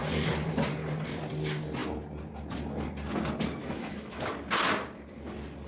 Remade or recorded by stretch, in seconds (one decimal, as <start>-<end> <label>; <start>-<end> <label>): 0.0-3.6 recorded; 3.6-4.2 remade; 4.2-5.7 recorded